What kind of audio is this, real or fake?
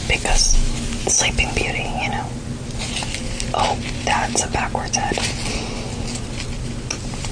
real